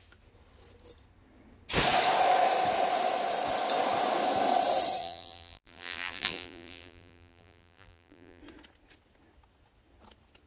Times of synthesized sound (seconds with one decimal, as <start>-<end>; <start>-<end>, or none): 5.0-8.4